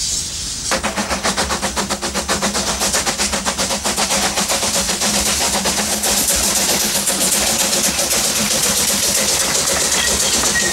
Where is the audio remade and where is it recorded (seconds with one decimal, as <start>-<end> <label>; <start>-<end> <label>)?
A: 0.0-10.7 recorded

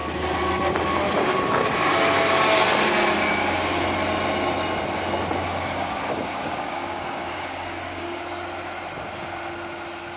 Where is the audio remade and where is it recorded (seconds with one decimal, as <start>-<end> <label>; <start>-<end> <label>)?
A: 0.0-5.4 recorded; 5.4-8.2 remade; 8.2-10.2 recorded

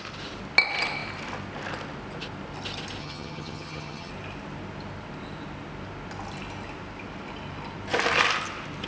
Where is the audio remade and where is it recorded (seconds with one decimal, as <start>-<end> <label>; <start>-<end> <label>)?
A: 0.0-3.0 recorded; 3.0-4.1 remade; 4.1-8.9 recorded

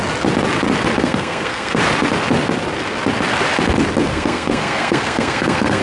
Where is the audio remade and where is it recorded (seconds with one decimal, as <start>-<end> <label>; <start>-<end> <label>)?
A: 0.0-1.0 recorded; 1.0-1.8 remade; 1.8-4.1 recorded; 4.1-5.8 remade

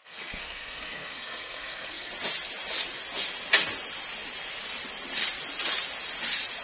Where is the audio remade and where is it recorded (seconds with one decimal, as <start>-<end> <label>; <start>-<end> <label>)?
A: 0.0-2.1 remade; 2.1-6.6 recorded

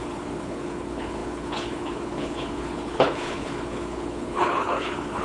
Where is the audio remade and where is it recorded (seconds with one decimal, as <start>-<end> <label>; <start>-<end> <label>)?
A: 0.0-5.2 remade

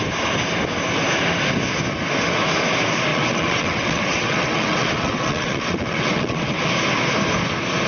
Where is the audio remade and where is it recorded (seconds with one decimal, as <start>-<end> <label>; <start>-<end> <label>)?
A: 0.0-3.1 recorded; 3.1-6.6 remade; 6.6-7.9 recorded